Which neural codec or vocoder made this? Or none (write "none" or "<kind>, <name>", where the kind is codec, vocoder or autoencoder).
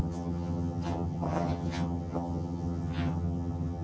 vocoder, HiFi-GAN